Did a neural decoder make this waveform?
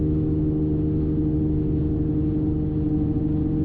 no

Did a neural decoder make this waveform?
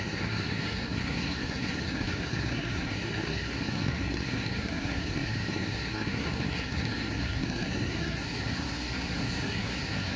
yes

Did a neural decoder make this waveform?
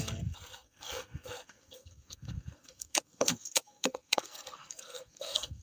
yes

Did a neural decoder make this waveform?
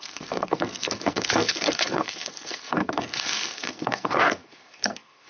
yes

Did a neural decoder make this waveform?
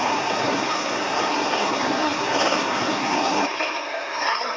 yes